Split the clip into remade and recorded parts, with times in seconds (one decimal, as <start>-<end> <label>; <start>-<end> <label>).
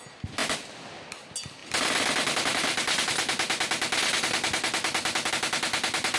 0.0-6.2 recorded